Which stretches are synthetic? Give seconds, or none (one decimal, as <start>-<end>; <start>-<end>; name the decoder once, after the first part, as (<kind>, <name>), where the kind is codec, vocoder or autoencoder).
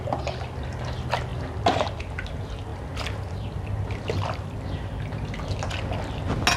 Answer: none